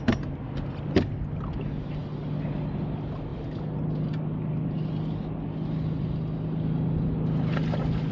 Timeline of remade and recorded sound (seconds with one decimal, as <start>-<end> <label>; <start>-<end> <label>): 0.0-8.1 recorded